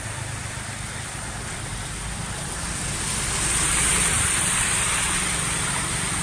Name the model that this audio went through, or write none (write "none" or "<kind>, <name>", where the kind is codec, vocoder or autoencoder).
none